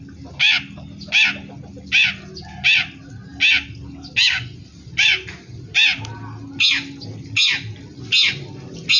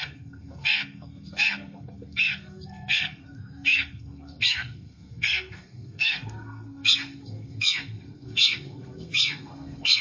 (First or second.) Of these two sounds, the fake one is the second